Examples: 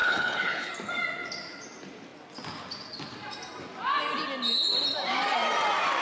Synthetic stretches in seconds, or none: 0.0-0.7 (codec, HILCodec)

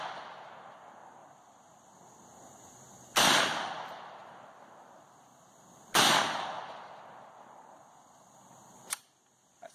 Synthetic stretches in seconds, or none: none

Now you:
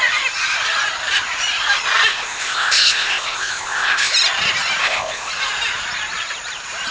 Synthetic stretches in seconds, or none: 2.1-4.1 (codec, ZipCodec); 4.8-5.3

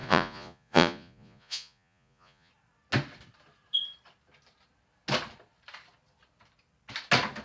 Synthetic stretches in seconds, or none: 0.0-2.5 (vocoder, Vocos)

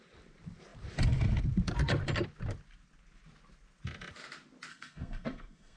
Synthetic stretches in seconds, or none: 4.7-5.8 (codec, SNAC)

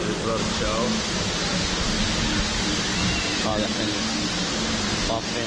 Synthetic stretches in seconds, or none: none

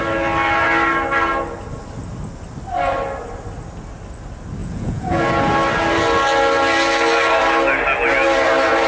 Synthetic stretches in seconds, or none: 4.6-5.3 (vocoder, Vocos)